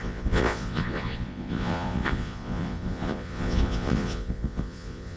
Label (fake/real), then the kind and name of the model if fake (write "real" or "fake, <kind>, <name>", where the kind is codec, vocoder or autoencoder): fake, vocoder, Vocos